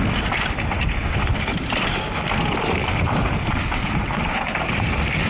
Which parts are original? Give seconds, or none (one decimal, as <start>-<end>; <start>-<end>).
0.0-2.8